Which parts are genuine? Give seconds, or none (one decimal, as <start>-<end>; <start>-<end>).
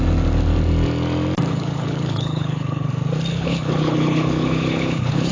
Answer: 0.0-1.5; 2.9-3.3